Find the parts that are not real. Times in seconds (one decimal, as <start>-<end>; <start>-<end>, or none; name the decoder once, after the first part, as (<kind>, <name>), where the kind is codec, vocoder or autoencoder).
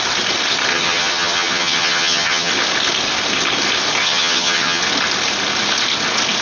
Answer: 0.7-2.5 (vocoder, HiFi-GAN); 4.0-4.8